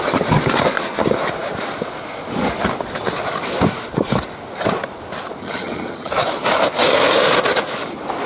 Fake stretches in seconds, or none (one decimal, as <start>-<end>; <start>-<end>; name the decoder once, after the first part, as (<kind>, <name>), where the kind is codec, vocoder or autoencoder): 5.4-6.1 (vocoder, HiFi-GAN)